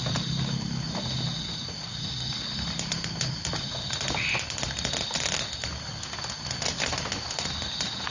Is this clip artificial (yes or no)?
no